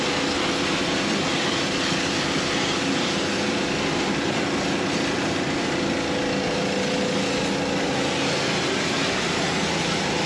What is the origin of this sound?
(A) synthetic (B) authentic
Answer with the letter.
B